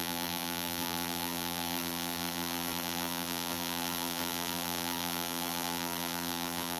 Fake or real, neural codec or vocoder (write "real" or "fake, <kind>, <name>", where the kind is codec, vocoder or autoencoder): fake, vocoder, BigVGAN v2